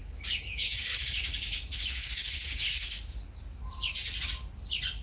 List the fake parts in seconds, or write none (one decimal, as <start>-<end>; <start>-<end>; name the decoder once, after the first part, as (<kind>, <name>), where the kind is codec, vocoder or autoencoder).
0.0-3.0 (codec, DAC)